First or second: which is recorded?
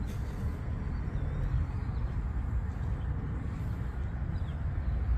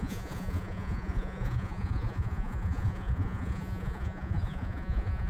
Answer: first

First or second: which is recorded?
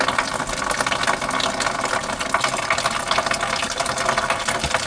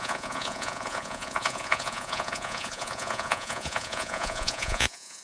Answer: first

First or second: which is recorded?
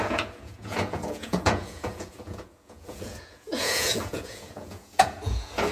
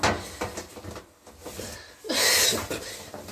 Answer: second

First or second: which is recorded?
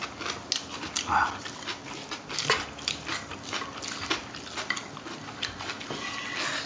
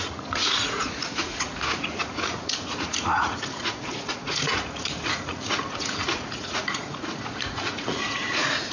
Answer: first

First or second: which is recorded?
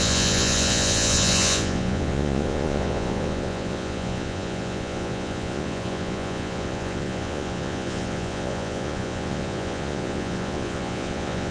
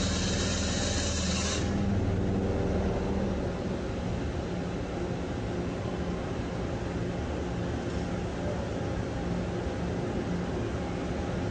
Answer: second